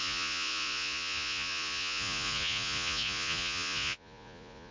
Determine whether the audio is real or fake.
fake